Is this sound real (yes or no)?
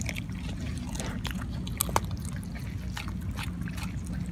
yes